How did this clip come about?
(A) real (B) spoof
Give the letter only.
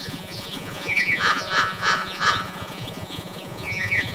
B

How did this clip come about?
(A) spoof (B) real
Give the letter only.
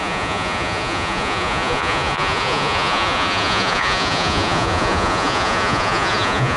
A